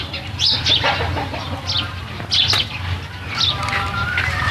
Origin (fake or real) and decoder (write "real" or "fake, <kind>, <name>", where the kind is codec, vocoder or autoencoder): real